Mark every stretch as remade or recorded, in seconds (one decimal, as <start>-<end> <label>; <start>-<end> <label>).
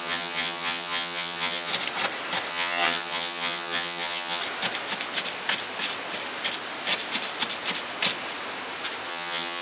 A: 0.0-1.7 remade; 1.7-2.5 recorded; 2.5-4.4 remade; 4.4-9.1 recorded; 9.1-9.6 remade